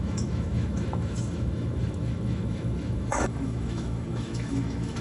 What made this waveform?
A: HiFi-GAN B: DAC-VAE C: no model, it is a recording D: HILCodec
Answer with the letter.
B